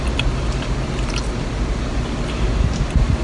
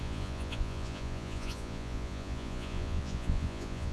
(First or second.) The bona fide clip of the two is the first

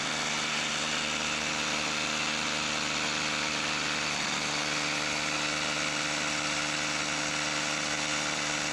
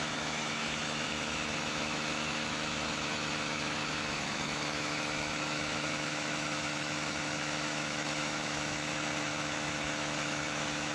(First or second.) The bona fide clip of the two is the first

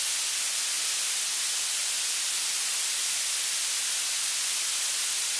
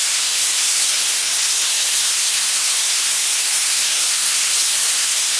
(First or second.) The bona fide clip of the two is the first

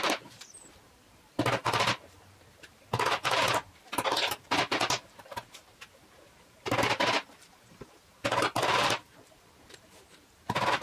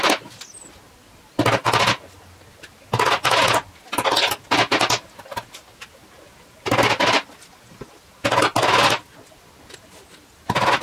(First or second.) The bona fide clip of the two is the second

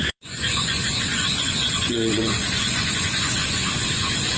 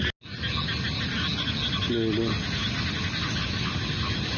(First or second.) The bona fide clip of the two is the second